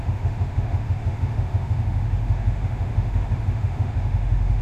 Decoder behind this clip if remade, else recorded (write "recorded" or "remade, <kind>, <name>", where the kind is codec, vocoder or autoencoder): remade, autoencoder, DAC-VAE